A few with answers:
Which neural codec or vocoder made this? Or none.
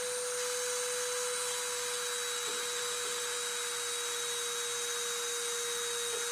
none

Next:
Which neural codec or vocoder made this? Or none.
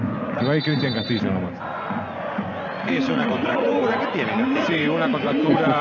vocoder, Vocos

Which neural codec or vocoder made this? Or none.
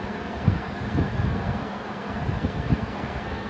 codec, SNAC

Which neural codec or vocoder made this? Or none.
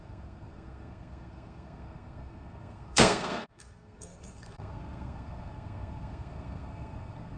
codec, SNAC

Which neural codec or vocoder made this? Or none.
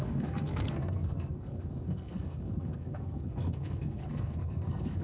codec, SNAC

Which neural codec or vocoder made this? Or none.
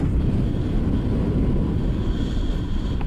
vocoder, BigVGAN v2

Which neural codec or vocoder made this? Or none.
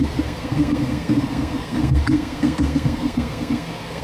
codec, SNAC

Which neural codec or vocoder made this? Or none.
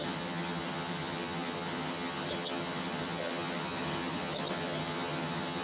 vocoder, HiFi-GAN